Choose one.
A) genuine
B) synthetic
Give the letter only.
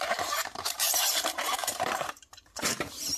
B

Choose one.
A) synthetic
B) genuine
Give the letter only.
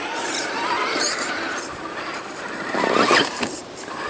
A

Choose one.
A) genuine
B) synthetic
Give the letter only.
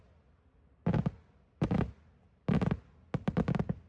A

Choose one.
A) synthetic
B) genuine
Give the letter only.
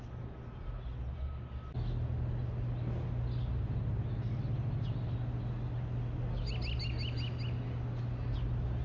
B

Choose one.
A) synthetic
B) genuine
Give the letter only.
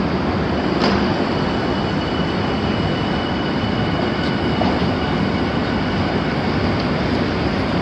A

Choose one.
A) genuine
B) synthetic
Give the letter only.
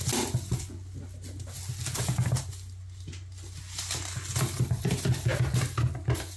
A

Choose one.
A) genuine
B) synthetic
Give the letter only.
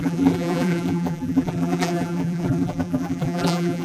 B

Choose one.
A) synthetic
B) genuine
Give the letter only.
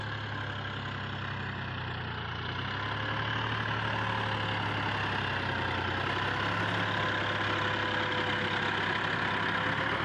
B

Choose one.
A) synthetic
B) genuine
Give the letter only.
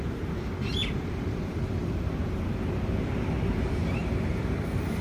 A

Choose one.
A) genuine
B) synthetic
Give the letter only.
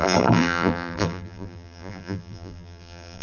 B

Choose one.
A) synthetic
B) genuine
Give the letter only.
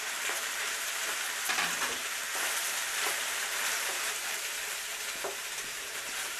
A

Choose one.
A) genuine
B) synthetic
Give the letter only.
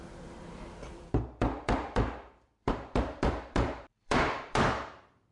B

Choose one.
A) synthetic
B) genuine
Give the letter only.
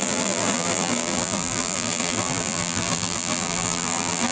A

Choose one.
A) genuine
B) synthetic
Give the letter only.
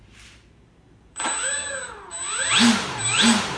B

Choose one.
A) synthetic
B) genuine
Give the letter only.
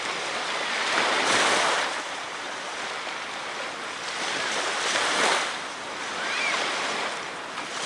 A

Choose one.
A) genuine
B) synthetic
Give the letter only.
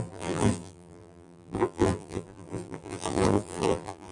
B